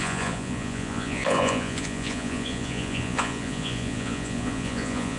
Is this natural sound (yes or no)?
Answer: no